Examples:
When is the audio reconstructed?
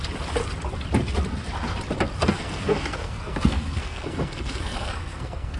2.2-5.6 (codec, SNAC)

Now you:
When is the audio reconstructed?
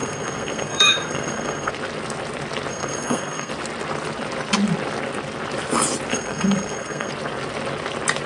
0.0-1.7 (codec, SNAC); 2.7-3.5; 6.1-7.1